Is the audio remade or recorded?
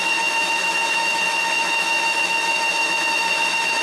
remade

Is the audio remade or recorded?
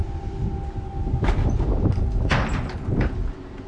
recorded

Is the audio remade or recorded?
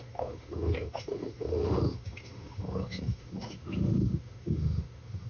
remade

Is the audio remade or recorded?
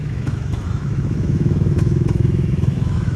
remade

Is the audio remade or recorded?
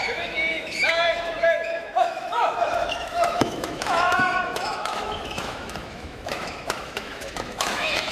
remade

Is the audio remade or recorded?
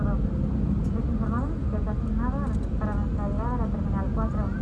recorded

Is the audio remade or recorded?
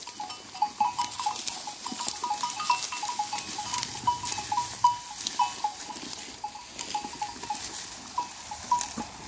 recorded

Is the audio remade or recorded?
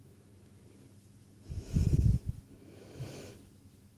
remade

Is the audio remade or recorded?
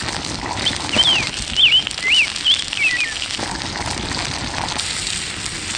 recorded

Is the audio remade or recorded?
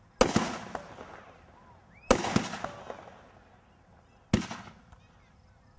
recorded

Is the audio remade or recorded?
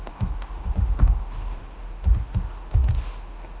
remade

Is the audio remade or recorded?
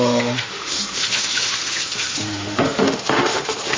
remade